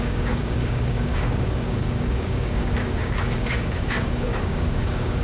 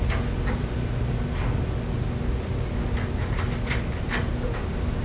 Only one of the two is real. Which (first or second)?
second